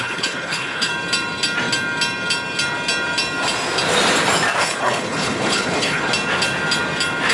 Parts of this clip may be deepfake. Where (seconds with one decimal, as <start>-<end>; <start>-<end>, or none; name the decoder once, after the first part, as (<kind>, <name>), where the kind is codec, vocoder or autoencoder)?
0.0-0.9 (codec, HILCodec); 4.6-6.1